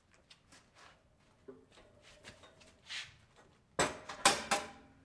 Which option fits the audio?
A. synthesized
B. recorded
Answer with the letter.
B